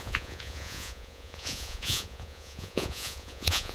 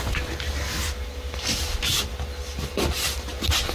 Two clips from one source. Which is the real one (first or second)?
second